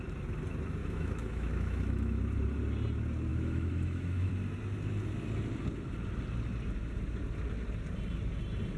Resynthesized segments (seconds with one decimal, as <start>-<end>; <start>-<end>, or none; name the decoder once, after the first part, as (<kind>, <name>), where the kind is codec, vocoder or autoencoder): 0.8-2.2 (autoencoder, DAC-VAE); 3.3-4.3